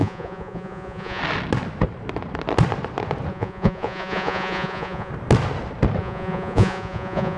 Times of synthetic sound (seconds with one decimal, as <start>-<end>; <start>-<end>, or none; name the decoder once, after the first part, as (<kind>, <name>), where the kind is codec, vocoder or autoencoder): 0.0-1.2 (vocoder, Vocos); 3.3-5.1; 6.0-7.4